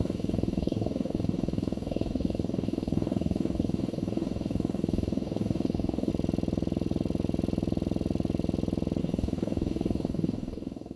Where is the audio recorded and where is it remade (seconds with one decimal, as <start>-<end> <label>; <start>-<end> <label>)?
0.0-6.1 remade; 6.1-9.0 recorded; 9.0-11.0 remade